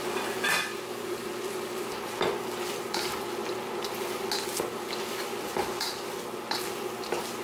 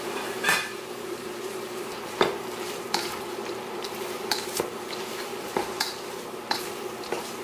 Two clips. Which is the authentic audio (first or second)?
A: first